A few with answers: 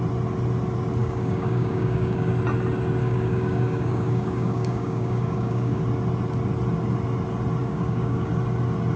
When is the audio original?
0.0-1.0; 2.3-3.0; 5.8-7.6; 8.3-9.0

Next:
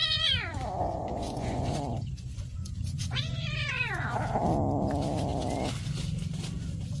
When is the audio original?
4.2-7.0